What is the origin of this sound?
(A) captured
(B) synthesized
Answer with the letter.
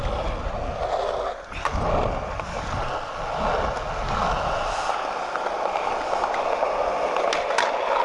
A